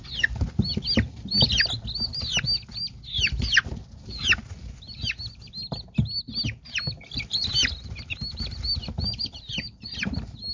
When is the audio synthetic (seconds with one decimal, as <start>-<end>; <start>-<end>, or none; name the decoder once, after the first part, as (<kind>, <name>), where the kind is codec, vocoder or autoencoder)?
none